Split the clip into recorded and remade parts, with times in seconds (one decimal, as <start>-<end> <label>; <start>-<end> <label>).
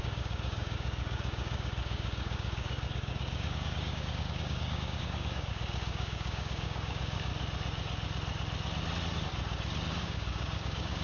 0.0-7.3 remade; 7.3-10.0 recorded; 10.0-11.0 remade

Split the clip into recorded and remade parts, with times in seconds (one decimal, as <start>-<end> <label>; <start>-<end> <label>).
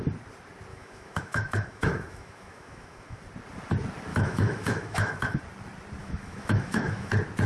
0.0-0.7 recorded; 0.7-3.2 remade; 3.2-4.1 recorded; 4.1-5.4 remade; 5.4-6.0 recorded; 6.0-7.1 remade; 7.1-7.5 recorded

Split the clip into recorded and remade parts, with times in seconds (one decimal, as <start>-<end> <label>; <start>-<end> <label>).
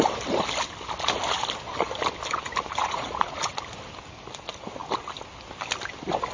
0.0-2.8 recorded; 2.8-3.6 remade; 3.6-6.3 recorded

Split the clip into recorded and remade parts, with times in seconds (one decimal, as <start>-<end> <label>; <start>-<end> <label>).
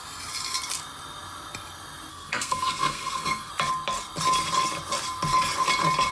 0.0-2.1 recorded; 2.1-3.5 remade; 3.5-6.1 recorded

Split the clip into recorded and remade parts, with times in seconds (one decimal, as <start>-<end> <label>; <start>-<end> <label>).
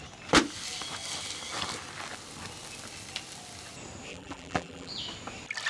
0.0-4.1 recorded; 4.1-4.9 remade; 4.9-5.7 recorded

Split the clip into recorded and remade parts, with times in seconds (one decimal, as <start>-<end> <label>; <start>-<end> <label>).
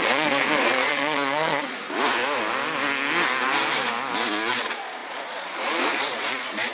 0.0-1.8 remade; 1.8-4.5 recorded; 4.5-6.7 remade